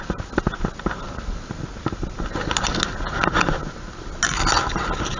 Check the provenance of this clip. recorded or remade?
recorded